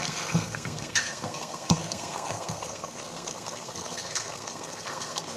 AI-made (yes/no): yes